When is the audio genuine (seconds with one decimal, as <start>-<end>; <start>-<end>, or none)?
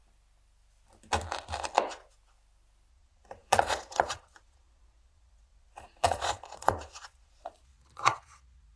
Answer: 0.0-2.9